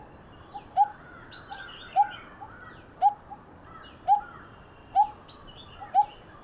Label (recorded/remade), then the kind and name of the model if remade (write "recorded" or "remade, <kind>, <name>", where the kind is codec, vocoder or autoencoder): recorded